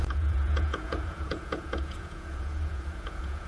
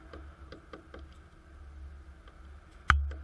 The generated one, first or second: first